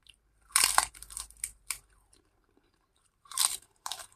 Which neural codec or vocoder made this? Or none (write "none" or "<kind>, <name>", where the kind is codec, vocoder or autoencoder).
vocoder, BigVGAN v2